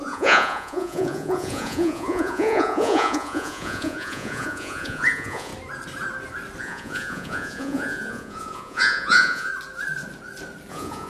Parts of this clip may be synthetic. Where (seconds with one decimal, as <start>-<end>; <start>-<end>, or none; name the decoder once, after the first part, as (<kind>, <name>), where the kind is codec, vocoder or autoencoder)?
0.0-5.5 (vocoder, Vocos); 6.6-9.5; 10.7-11.1